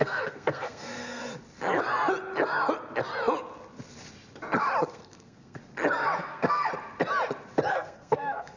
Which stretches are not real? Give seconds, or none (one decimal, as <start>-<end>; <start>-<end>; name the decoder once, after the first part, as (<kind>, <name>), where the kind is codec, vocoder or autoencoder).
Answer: 0.0-1.2 (codec, SNAC); 4.9-5.6; 6.2-6.7; 7.7-8.6